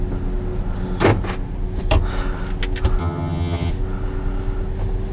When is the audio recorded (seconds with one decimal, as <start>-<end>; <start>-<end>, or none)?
0.0-3.0; 3.7-5.1

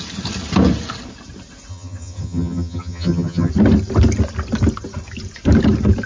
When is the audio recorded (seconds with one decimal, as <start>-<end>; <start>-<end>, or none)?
0.0-1.7; 3.5-6.1